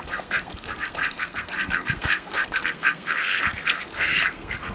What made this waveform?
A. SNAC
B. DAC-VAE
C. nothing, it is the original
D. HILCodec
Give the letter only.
A